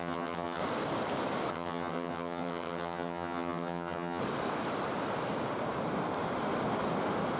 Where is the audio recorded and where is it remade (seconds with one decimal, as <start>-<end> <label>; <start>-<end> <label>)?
0.0-0.6 remade; 0.6-1.5 recorded; 1.5-4.2 remade; 4.2-7.4 recorded